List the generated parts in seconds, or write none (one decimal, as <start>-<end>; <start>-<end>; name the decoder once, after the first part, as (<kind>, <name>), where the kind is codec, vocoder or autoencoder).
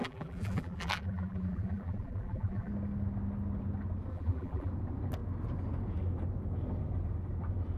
0.0-2.7 (vocoder, BigVGAN v2); 4.1-4.7